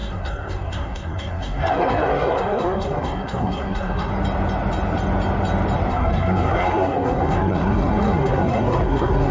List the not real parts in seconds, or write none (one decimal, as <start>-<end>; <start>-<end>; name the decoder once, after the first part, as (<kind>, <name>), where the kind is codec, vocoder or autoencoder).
0.0-4.1 (codec, SNAC); 5.9-9.3